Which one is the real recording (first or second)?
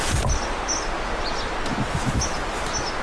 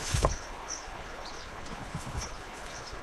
first